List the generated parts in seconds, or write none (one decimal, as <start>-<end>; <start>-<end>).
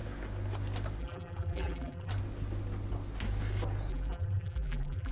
1.0-2.1; 3.9-5.1